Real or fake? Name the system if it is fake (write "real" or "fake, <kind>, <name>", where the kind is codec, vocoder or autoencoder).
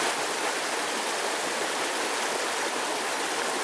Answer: real